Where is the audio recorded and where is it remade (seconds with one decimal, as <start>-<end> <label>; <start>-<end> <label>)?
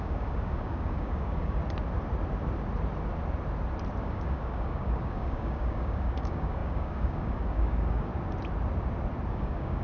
0.0-1.6 remade; 1.6-4.0 recorded; 4.0-8.1 remade; 8.1-9.3 recorded; 9.3-9.8 remade